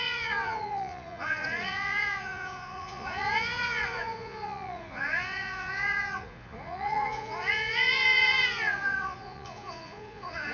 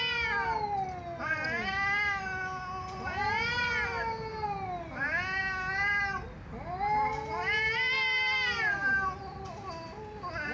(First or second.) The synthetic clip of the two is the first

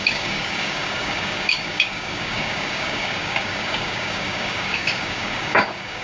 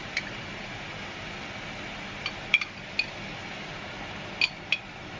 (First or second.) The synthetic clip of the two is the first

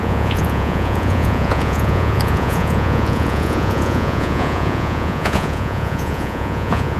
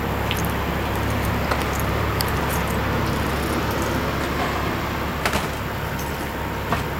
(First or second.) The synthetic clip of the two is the first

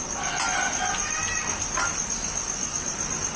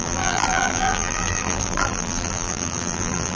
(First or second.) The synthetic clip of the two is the second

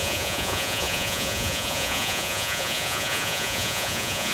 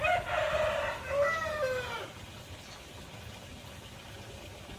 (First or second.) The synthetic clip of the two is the first